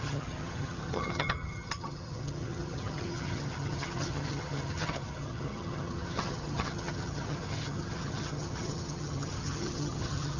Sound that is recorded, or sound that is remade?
remade